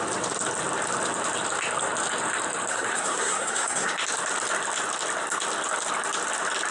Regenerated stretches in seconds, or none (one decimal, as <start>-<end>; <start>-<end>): 2.7-3.9